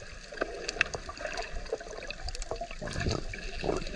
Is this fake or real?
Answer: real